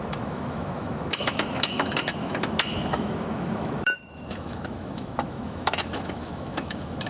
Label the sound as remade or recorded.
remade